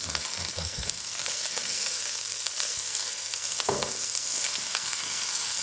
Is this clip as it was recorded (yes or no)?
no